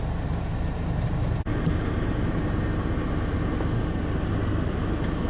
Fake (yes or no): no